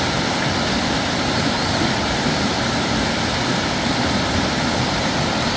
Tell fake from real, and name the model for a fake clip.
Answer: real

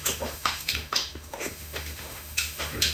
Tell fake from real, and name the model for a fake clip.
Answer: fake, autoencoder, DAC-VAE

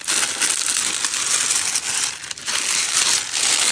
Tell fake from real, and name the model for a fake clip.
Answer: real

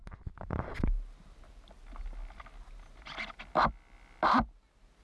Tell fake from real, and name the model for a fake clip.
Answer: real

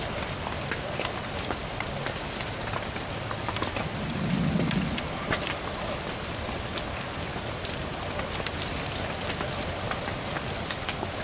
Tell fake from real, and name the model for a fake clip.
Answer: real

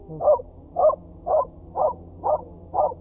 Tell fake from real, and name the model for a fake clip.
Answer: real